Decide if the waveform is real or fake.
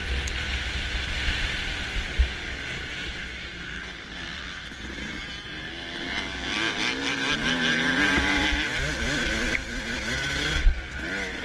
real